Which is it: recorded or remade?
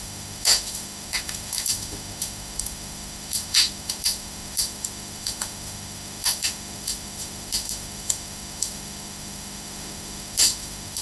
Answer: remade